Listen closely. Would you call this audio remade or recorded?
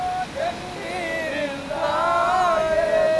recorded